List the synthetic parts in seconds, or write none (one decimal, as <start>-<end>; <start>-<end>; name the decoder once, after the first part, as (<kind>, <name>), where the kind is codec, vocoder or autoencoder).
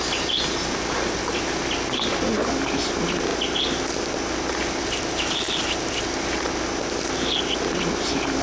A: none